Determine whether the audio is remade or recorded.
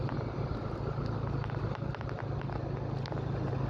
recorded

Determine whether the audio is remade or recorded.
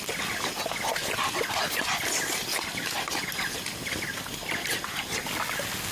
recorded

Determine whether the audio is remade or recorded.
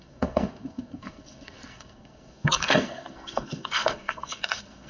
remade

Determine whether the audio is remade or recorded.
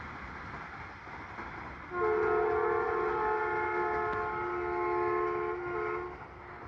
recorded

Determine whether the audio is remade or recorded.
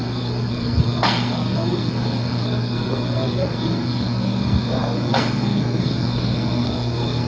remade